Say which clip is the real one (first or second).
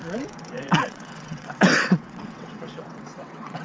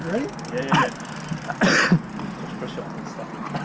second